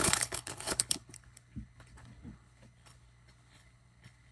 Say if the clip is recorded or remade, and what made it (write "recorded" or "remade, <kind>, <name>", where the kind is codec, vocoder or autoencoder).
remade, codec, HILCodec